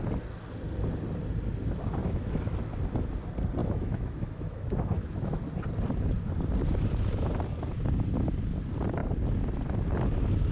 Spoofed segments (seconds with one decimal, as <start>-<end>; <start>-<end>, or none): 2.0-2.6; 3.6-5.4